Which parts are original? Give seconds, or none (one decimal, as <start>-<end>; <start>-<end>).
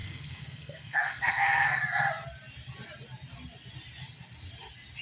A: 1.8-5.0